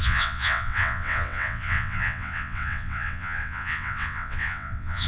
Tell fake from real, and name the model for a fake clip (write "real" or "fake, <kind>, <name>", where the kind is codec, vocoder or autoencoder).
fake, vocoder, WaveNeXt